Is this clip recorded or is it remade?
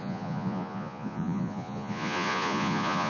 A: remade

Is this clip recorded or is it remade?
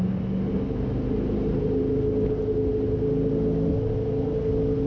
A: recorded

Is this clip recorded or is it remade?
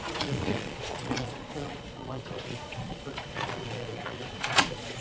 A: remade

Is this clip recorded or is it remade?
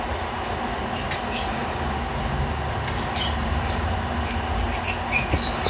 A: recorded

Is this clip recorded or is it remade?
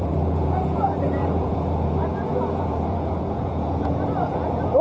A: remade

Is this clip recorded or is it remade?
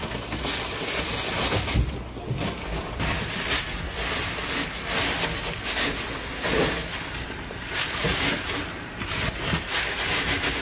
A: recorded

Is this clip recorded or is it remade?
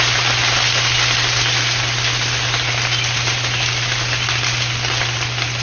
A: recorded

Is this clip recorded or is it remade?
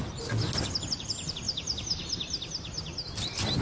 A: recorded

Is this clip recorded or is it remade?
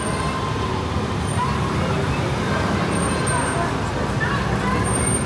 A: recorded